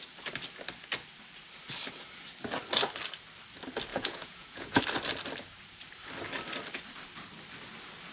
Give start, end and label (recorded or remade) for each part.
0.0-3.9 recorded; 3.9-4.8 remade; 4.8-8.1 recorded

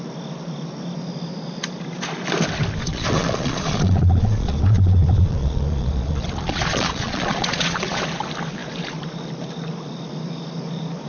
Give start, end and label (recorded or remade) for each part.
0.0-2.8 recorded; 2.8-8.0 remade; 8.0-11.1 recorded

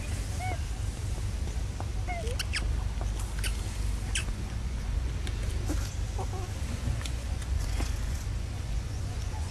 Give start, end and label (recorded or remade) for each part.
0.0-4.2 recorded; 4.2-5.1 remade; 5.1-6.7 recorded; 6.7-9.5 remade

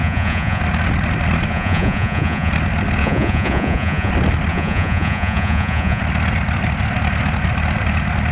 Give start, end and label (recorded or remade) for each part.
0.0-0.6 remade; 0.6-1.5 recorded; 1.5-2.5 remade; 2.5-3.0 recorded; 3.0-4.1 remade; 4.1-4.5 recorded; 4.5-6.0 remade; 6.0-8.3 recorded

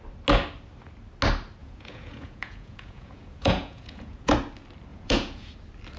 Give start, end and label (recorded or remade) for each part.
0.0-1.6 recorded; 1.6-4.3 remade; 4.3-4.9 recorded; 4.9-5.5 remade; 5.5-6.0 recorded